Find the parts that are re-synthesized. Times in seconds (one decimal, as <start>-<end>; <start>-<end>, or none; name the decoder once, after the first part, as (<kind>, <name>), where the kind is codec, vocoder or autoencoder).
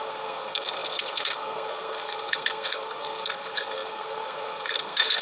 0.0-5.2 (codec, SNAC)